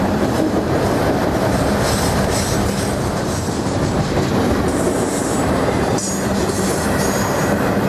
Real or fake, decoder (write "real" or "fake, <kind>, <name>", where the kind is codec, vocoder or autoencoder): fake, vocoder, BigVGAN v2